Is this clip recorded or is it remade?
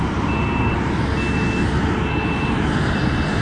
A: recorded